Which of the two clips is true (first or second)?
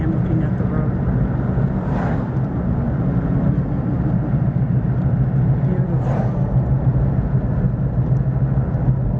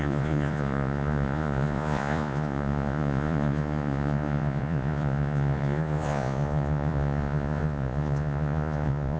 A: first